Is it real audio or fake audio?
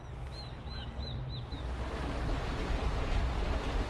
real